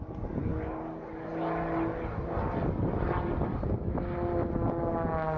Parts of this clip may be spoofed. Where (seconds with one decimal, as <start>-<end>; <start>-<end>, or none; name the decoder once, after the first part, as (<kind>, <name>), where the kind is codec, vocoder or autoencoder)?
none